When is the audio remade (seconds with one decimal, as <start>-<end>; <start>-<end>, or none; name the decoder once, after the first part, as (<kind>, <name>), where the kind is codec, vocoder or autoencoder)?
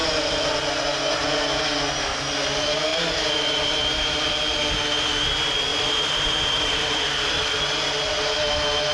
2.9-4.3 (vocoder, BigVGAN v2); 5.7-7.5